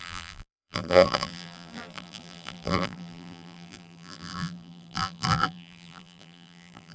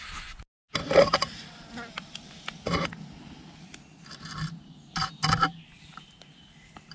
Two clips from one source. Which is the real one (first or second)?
second